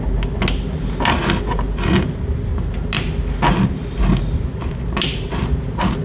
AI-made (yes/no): no